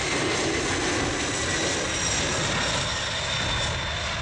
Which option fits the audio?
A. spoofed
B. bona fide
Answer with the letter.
B